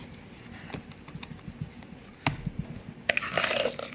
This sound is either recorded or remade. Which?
recorded